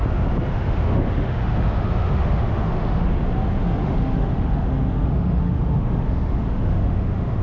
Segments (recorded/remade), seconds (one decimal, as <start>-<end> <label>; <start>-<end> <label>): 0.0-0.5 recorded; 0.5-3.2 remade; 3.2-3.8 recorded; 3.8-7.4 remade